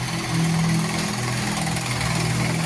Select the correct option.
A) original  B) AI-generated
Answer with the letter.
A